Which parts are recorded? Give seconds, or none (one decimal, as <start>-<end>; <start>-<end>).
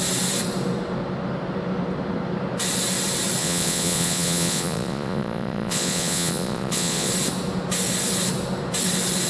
0.0-3.4; 7.1-9.3